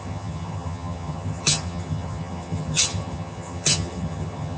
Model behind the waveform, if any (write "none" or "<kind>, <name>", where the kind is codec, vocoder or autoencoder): vocoder, HiFi-GAN